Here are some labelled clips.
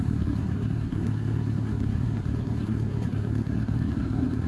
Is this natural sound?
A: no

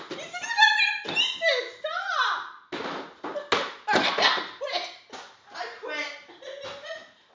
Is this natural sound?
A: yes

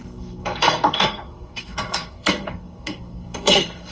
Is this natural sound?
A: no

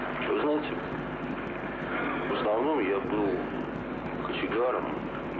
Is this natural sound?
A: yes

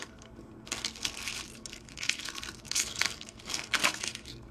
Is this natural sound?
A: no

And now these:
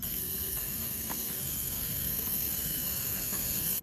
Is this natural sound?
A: no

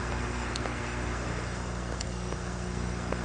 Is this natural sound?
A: no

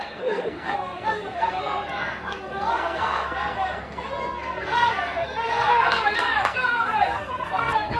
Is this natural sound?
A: no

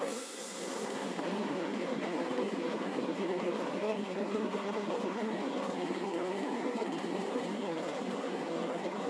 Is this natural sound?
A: no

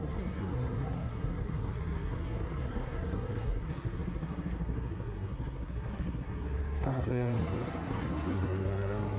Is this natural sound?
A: no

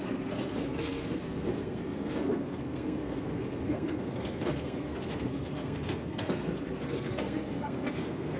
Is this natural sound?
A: no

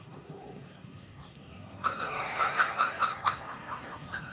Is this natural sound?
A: no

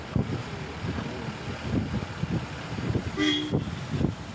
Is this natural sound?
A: yes